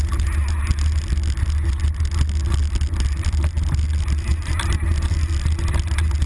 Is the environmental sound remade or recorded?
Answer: recorded